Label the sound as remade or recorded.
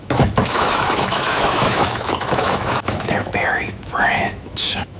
remade